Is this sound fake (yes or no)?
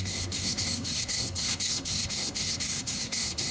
yes